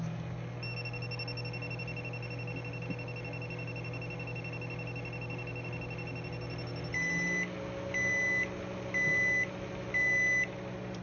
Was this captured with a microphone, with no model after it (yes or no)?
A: yes